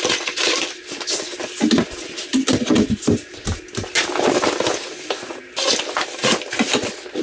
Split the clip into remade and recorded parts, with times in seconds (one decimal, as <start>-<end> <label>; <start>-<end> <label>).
0.0-7.2 recorded